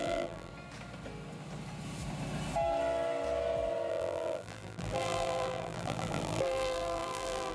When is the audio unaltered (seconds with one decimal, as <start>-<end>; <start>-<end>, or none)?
0.5-3.9